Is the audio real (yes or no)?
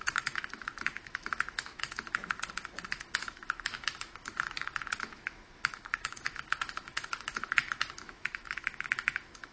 no